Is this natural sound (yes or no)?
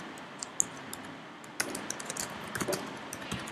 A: yes